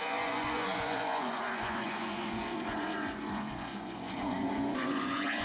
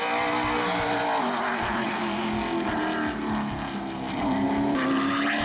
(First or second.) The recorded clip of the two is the second